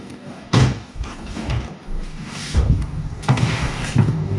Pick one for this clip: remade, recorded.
remade